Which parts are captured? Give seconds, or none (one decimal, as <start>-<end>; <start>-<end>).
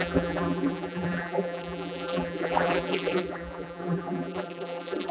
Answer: none